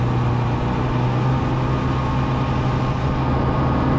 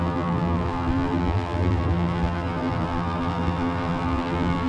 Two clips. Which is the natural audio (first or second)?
first